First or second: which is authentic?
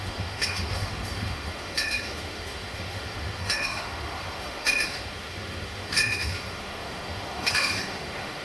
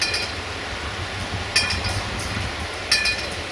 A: second